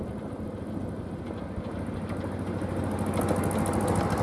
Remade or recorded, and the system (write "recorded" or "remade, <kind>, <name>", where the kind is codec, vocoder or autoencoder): recorded